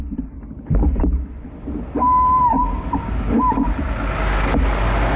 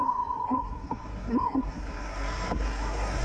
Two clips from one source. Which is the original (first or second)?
first